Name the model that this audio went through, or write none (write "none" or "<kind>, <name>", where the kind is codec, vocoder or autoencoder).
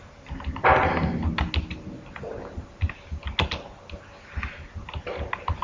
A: none